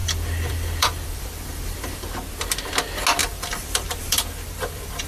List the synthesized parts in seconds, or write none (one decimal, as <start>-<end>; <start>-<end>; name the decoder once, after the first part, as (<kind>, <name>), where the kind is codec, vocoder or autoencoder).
0.0-2.1 (vocoder, BigVGAN v2); 3.2-5.1